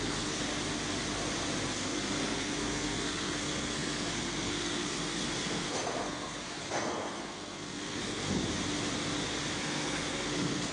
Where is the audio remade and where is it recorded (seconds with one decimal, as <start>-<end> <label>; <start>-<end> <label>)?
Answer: 0.0-0.5 remade; 0.5-1.8 recorded; 1.8-8.4 remade; 8.4-9.6 recorded; 9.6-10.7 remade